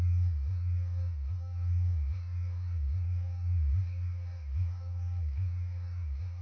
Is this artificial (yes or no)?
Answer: yes